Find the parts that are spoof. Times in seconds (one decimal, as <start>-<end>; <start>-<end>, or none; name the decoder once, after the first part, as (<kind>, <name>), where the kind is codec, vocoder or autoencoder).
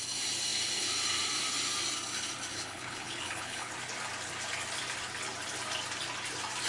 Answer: 2.5-3.7 (codec, HILCodec)